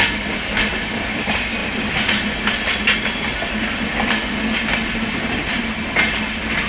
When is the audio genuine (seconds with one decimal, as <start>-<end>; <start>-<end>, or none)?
0.0-6.7